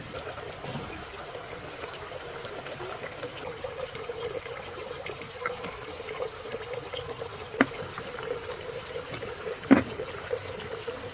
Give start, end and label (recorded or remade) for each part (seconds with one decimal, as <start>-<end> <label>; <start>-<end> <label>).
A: 0.0-0.7 recorded; 0.7-4.9 remade; 4.9-11.1 recorded